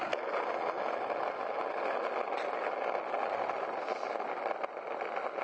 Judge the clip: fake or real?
real